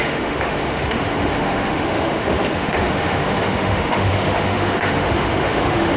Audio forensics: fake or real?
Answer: fake